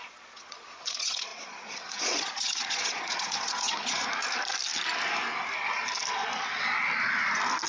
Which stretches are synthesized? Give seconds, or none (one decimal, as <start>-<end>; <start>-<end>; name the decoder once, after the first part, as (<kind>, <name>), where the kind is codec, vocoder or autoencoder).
0.0-4.0 (vocoder, Vocos)